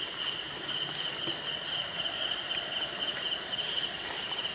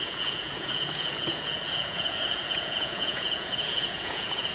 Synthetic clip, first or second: second